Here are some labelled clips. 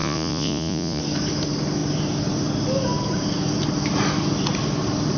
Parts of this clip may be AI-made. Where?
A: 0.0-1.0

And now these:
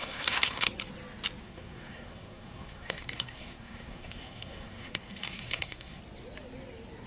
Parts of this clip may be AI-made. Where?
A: 0.0-0.7; 1.4-6.0

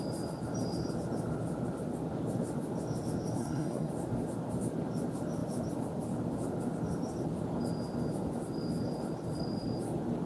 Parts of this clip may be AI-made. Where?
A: 3.4-3.9

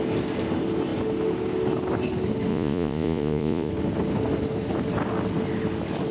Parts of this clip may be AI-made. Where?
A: 2.5-3.7